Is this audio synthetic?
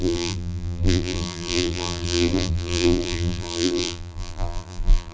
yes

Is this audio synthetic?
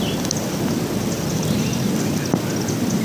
no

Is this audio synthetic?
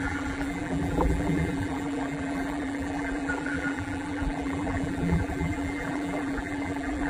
yes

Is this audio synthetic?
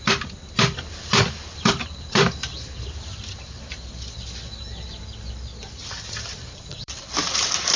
yes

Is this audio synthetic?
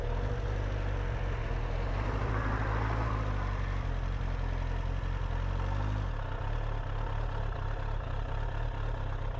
no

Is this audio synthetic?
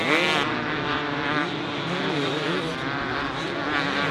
no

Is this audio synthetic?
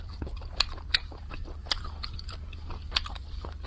yes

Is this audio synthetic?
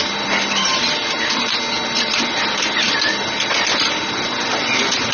no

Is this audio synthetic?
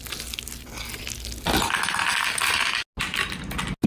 no